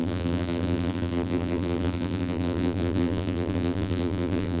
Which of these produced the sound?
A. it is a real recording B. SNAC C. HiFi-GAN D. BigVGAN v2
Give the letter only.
D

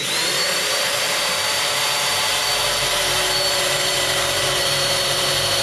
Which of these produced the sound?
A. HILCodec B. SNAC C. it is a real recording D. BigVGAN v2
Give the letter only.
D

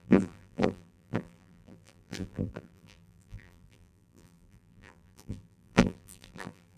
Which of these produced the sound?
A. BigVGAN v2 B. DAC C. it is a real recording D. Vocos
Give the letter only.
A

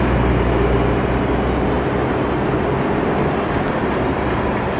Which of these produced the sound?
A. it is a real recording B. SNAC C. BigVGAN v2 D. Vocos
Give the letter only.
A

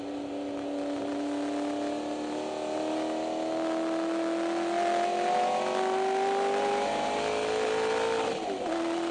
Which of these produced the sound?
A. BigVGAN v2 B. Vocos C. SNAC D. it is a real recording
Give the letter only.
D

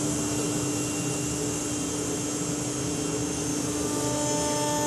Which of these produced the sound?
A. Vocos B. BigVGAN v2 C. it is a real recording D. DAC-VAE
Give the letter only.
C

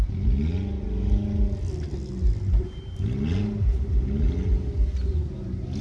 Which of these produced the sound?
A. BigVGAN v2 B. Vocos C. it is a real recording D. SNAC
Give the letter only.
C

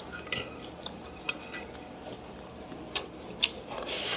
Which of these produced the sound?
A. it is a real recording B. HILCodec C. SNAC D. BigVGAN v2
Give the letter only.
D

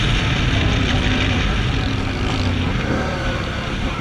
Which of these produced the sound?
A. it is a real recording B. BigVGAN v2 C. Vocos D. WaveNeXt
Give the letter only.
B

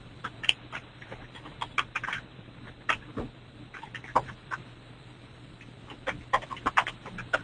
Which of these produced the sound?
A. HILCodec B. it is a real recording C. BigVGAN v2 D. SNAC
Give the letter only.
C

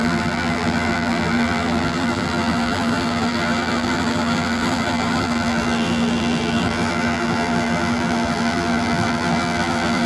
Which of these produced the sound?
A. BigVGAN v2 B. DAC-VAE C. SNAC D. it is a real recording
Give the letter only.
A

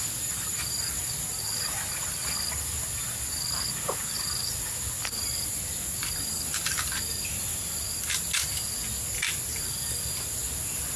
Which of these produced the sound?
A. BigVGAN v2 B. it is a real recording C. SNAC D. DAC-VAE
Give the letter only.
B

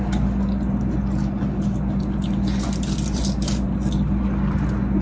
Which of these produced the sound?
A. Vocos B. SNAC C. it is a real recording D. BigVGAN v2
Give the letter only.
C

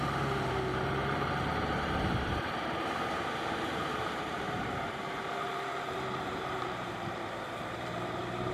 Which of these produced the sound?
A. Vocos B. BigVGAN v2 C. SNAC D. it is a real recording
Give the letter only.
B